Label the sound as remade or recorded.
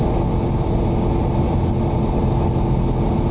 recorded